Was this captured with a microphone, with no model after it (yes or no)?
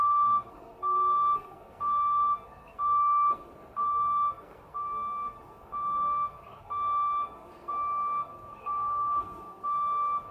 no